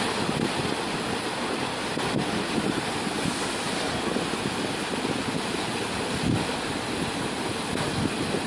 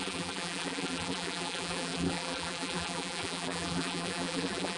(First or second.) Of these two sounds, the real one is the first